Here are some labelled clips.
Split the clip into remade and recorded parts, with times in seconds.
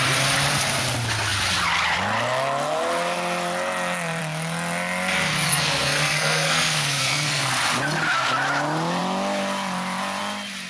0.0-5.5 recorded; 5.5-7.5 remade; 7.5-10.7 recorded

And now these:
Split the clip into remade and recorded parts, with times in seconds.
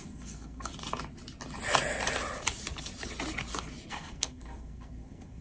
0.0-0.7 remade; 0.7-3.9 recorded; 3.9-5.4 remade